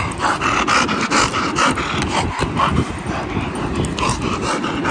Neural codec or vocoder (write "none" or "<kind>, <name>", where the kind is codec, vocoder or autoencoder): none